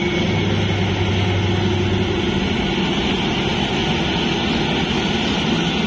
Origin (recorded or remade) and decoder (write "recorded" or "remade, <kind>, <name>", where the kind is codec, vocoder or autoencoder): recorded